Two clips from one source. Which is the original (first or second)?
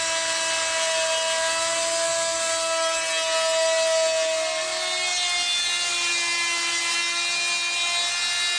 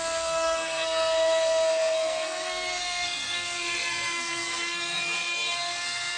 first